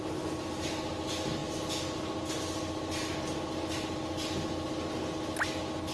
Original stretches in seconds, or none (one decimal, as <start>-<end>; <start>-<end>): 0.0-5.9